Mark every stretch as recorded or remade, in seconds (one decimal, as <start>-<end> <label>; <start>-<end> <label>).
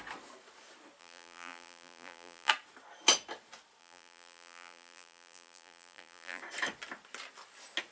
0.0-1.0 recorded; 1.0-2.5 remade; 2.5-3.8 recorded; 3.8-6.4 remade; 6.4-7.9 recorded